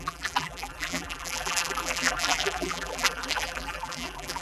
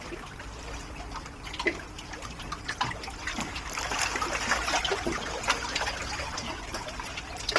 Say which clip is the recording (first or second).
second